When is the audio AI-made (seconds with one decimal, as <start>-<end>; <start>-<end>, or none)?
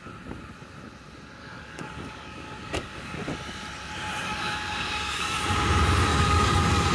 1.4-3.3; 4.2-5.4; 6.1-6.9